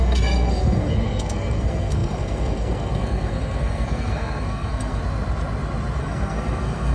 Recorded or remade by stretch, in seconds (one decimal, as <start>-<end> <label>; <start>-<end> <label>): 0.0-5.0 remade; 5.0-6.0 recorded; 6.0-6.9 remade